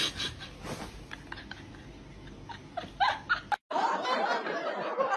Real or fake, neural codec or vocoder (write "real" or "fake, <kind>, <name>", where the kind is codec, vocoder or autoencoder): real